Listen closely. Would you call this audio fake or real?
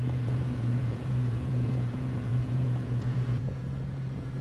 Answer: fake